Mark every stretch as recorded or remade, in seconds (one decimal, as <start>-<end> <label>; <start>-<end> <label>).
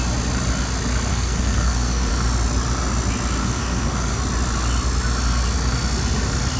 0.0-1.1 recorded; 1.1-2.1 remade; 2.1-3.4 recorded; 3.4-4.2 remade; 4.2-6.6 recorded